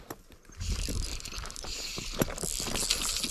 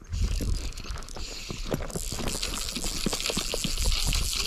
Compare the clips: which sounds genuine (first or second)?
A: second